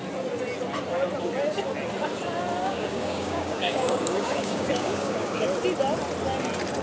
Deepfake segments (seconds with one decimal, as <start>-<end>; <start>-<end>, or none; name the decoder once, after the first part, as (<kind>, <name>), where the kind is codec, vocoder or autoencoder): 2.6-5.4 (codec, DAC)

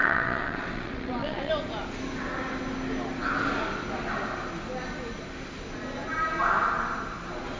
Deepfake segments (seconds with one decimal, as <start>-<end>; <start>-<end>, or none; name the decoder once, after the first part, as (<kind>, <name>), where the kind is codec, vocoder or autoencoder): 0.0-1.5 (vocoder, WaveNeXt)

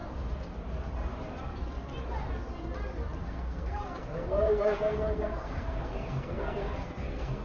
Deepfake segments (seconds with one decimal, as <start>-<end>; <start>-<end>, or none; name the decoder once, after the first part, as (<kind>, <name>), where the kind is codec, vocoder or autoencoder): 3.2-7.4 (codec, SNAC)

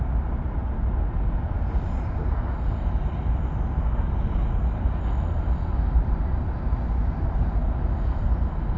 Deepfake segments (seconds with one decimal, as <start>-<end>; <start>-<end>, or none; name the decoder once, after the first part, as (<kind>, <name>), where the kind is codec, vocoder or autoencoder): none

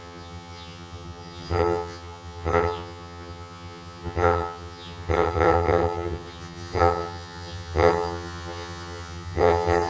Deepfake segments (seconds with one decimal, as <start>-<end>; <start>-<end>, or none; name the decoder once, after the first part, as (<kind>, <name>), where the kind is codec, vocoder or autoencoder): 0.0-9.9 (vocoder, HiFi-GAN)

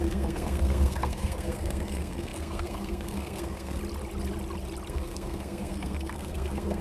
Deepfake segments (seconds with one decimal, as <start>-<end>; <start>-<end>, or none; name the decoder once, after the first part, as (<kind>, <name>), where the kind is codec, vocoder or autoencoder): 0.0-3.8 (codec, SNAC); 4.9-6.8

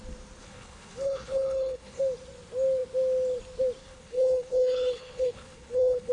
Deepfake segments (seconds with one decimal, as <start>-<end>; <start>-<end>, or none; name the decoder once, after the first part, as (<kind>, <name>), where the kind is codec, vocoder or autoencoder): 0.4-2.0 (codec, HILCodec); 3.8-6.1